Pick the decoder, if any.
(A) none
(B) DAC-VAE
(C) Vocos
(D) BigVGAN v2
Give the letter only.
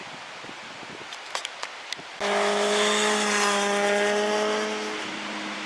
A